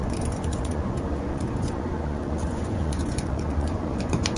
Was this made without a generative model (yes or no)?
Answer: no